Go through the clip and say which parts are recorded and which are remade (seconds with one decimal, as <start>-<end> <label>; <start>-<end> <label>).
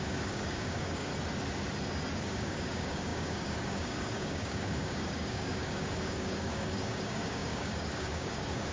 0.0-1.1 remade; 1.1-2.2 recorded; 2.2-8.7 remade